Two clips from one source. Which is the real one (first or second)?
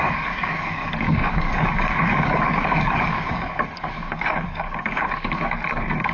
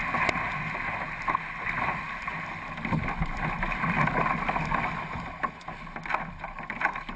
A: second